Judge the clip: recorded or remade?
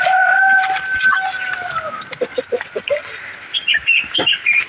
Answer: recorded